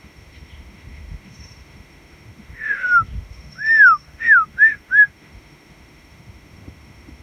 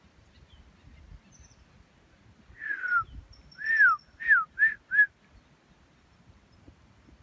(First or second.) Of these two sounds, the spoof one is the first